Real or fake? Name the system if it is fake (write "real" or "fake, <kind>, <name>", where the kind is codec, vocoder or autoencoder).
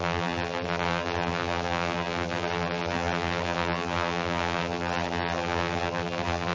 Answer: fake, vocoder, BigVGAN v2